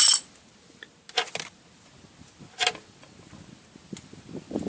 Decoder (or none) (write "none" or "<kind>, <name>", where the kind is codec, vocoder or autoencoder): none